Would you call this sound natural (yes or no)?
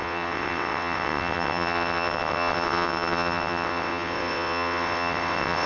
no